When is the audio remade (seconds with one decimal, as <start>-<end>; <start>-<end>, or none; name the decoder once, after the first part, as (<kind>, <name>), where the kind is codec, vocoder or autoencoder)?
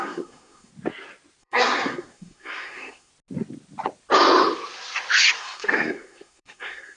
0.0-0.7 (codec, SNAC); 1.4-3.1; 5.4-7.0